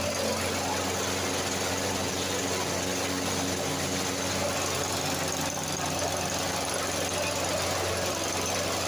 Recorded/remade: recorded